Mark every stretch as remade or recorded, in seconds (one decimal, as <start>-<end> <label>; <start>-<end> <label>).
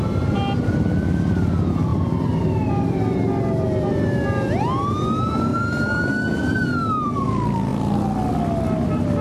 0.0-1.9 recorded; 1.9-3.0 remade; 3.0-5.5 recorded; 5.5-6.1 remade; 6.1-6.5 recorded; 6.5-7.2 remade; 7.2-9.2 recorded